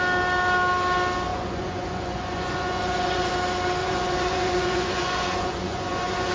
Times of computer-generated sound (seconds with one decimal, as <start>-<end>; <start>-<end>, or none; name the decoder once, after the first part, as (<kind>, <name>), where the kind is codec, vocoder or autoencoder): 1.3-3.3 (vocoder, Vocos); 3.8-6.3